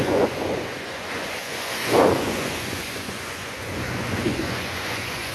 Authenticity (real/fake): fake